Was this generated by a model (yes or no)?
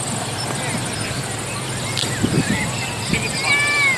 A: no